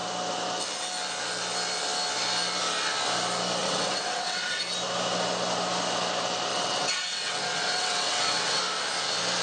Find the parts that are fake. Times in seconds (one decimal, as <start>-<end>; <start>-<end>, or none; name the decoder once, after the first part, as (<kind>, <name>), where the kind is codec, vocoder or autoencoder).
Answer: 3.6-4.6 (vocoder, WaveNeXt); 6.5-8.6